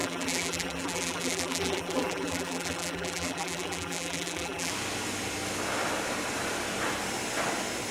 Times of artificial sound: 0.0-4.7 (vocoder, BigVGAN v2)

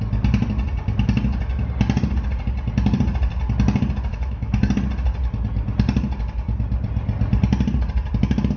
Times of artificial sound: 4.1-4.7 (autoencoder, DAC-VAE)

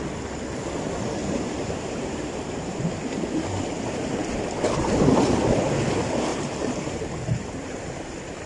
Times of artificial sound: 1.2-3.0 (vocoder, BigVGAN v2); 6.3-7.8